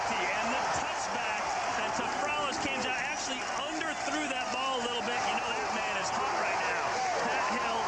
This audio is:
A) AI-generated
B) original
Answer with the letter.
B